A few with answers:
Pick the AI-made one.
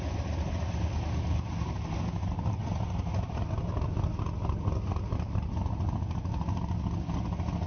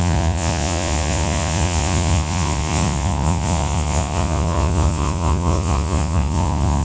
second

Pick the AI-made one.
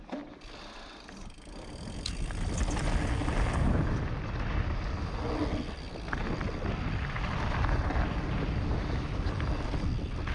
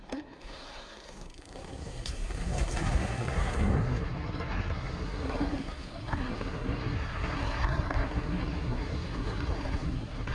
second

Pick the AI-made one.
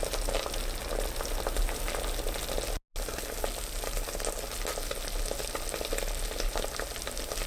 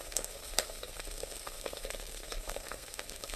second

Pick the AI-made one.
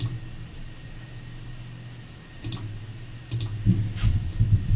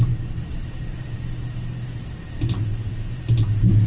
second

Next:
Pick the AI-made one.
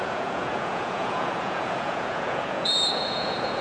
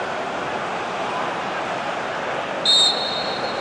first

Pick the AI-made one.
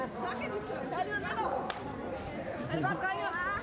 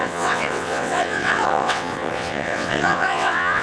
second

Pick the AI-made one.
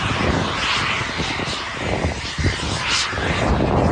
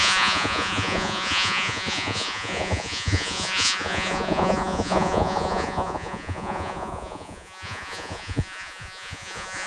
second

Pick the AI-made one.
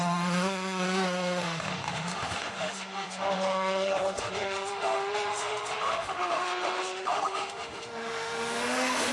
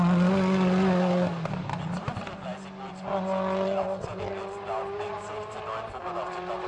first